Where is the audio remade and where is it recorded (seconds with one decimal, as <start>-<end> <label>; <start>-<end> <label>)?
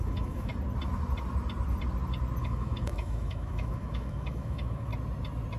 0.0-0.5 remade; 0.5-2.4 recorded; 2.4-4.9 remade; 4.9-5.6 recorded